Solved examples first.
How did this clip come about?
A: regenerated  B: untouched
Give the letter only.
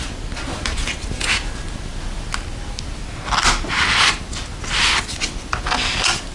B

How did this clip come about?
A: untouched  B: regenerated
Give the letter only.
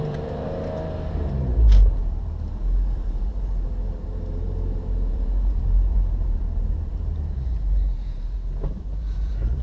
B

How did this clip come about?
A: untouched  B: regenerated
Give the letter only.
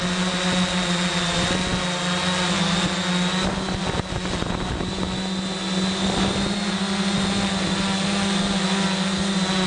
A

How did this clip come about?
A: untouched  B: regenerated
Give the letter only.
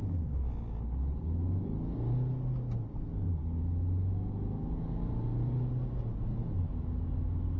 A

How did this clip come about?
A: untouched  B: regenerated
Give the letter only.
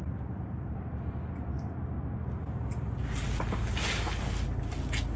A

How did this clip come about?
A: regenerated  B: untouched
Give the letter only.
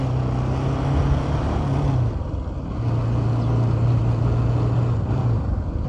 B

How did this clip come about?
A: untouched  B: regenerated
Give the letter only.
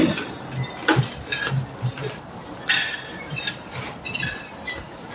B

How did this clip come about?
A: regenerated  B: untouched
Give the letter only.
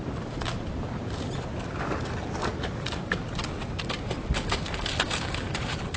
B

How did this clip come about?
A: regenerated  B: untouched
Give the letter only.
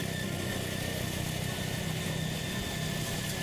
B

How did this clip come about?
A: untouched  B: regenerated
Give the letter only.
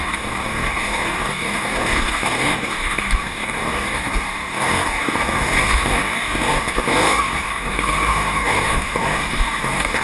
B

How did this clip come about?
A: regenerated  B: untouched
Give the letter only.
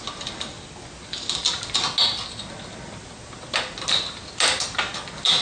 B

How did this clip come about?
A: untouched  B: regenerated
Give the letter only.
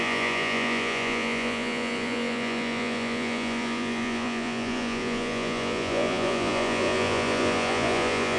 B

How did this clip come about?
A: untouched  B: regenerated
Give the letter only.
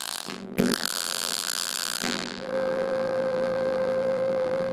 B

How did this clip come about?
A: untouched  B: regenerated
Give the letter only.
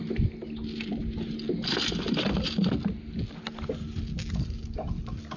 A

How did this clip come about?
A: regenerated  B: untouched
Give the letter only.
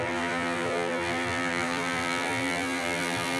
A